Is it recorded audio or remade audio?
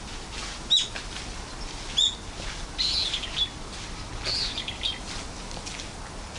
recorded